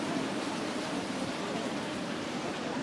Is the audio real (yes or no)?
no